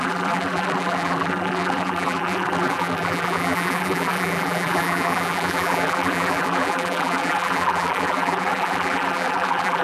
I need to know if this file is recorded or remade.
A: remade